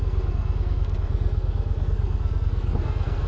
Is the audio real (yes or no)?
no